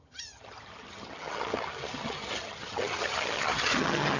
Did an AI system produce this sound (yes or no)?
yes